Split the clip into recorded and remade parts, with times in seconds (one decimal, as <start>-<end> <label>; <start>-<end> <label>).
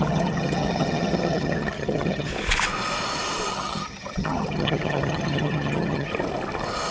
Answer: 0.0-2.3 remade; 2.3-3.5 recorded; 3.5-6.1 remade; 6.1-6.9 recorded